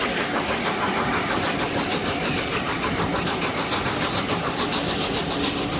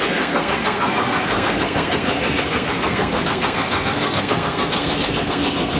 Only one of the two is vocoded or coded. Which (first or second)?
second